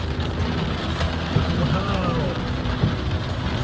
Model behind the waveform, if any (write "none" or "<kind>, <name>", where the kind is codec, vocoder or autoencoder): vocoder, BigVGAN v2